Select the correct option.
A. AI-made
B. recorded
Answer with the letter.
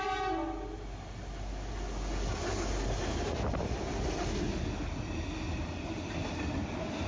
B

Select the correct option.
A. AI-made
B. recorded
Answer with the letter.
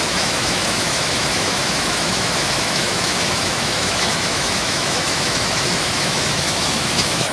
A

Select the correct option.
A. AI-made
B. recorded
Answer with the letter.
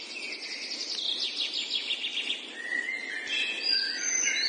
B